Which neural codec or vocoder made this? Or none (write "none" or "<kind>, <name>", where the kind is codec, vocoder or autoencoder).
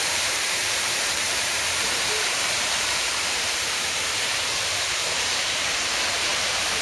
vocoder, BigVGAN v2